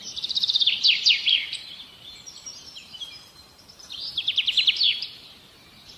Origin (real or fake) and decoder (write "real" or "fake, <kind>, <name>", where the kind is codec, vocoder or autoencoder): fake, vocoder, BigVGAN v2